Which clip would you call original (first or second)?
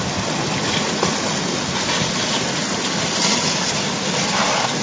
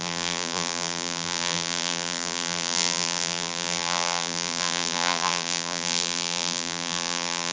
first